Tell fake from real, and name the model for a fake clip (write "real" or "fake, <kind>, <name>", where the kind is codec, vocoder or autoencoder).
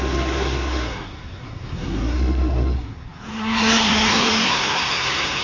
fake, codec, SNAC